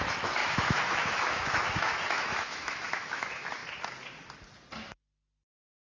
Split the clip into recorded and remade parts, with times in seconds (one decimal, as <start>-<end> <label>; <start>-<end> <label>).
0.0-3.6 remade; 3.6-5.9 recorded